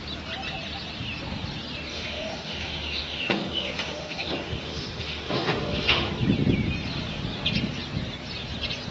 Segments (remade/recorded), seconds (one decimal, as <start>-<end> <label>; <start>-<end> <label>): 0.0-1.9 recorded; 1.9-6.1 remade; 6.1-8.9 recorded